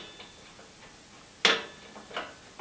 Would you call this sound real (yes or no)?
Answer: yes